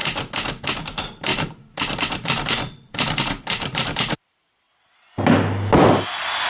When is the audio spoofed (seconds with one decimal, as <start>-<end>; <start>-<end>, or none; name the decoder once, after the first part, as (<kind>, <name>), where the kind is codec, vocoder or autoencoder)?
1.3-4.4 (vocoder, BigVGAN v2)